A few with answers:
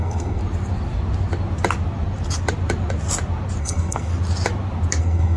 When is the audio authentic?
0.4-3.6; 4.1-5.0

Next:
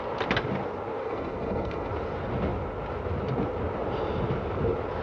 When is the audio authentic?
0.0-1.0; 1.9-5.0

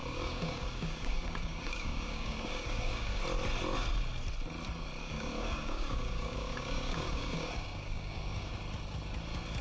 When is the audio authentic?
3.2-5.0; 8.5-9.6

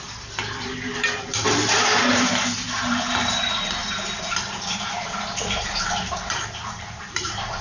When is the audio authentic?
0.0-1.3; 2.3-3.8

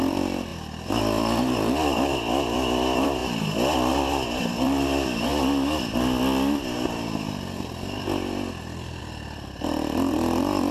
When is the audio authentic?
0.5-1.0; 3.2-3.9; 5.3-9.0